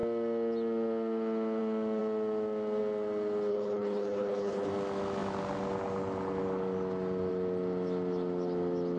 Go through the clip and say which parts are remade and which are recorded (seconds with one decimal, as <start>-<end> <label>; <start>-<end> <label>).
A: 0.0-3.5 recorded; 3.5-4.7 remade; 4.7-9.0 recorded